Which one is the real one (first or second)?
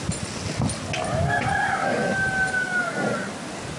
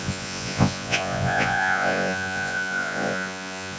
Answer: first